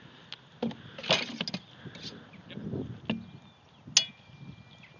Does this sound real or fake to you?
real